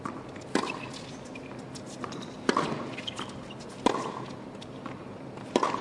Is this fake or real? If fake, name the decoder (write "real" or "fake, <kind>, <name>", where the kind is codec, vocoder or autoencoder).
real